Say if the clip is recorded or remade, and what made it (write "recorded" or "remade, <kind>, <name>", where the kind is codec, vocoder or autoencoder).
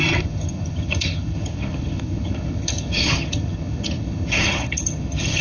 remade, vocoder, HiFi-GAN